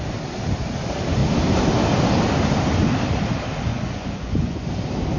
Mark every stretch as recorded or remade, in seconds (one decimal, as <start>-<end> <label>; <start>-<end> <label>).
0.0-3.7 recorded; 3.7-4.7 remade; 4.7-5.2 recorded